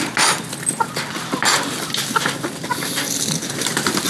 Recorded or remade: recorded